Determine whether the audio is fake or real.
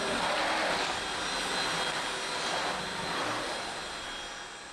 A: real